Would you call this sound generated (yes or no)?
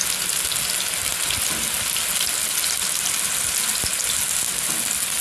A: no